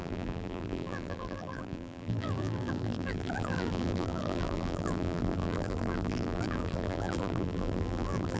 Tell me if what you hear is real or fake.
fake